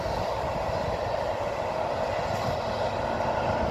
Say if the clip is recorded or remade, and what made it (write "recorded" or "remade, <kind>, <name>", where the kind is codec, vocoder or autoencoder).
recorded